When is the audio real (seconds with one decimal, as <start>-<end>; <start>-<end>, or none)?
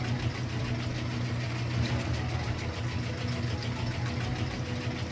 0.0-5.1